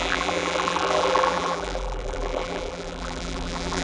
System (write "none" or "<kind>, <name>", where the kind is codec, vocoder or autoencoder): vocoder, BigVGAN v2